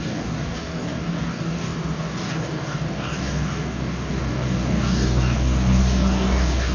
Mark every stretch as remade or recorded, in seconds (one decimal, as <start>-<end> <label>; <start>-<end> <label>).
0.0-6.7 remade